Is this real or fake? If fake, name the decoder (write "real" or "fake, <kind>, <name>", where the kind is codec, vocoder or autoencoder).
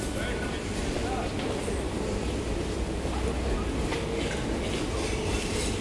real